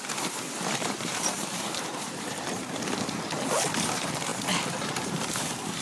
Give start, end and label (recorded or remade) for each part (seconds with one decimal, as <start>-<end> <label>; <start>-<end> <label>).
0.0-5.8 remade